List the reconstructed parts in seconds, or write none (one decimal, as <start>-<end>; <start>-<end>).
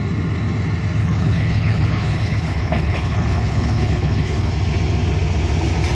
1.0-4.5